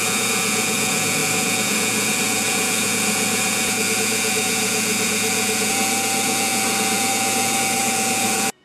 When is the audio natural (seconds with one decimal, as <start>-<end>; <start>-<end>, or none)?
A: none